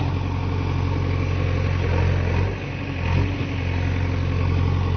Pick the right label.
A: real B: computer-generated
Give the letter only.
A